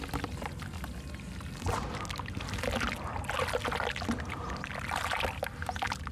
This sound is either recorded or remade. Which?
recorded